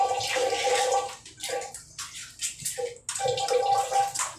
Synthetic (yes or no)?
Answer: no